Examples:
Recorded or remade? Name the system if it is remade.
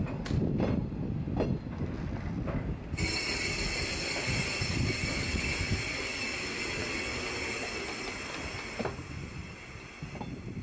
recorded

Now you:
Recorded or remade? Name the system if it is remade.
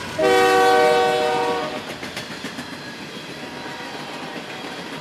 recorded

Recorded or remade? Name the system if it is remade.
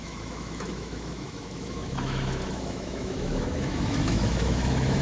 remade, autoencoder, DAC-VAE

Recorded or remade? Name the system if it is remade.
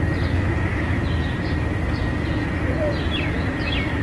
recorded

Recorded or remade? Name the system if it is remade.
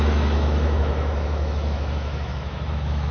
remade, autoencoder, DAC-VAE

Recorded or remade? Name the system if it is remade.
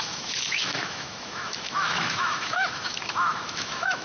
remade, autoencoder, DAC-VAE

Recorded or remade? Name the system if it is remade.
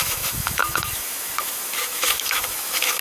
remade, autoencoder, DAC-VAE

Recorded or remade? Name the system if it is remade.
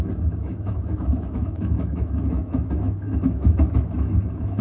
remade, autoencoder, DAC-VAE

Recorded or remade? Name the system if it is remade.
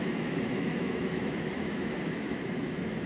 remade, autoencoder, DAC-VAE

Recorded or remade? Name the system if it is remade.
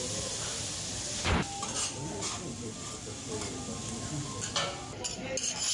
recorded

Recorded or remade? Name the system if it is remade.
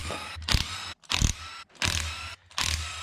recorded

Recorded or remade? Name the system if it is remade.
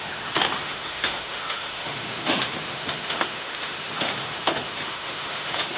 remade, autoencoder, DAC-VAE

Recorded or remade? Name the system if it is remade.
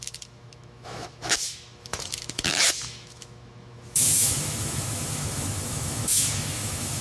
remade, autoencoder, DAC-VAE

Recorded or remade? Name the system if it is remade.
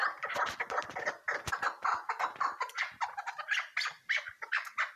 recorded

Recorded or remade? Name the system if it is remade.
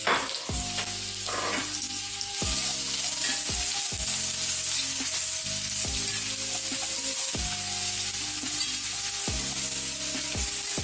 recorded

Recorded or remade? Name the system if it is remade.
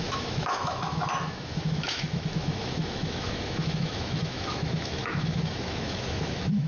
remade, autoencoder, DAC-VAE